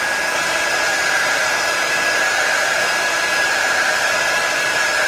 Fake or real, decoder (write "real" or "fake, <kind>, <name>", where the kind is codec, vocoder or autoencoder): fake, vocoder, BigVGAN v2